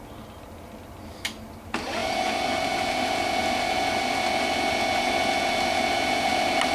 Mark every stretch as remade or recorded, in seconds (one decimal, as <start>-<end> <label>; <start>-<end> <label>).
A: 0.0-6.7 recorded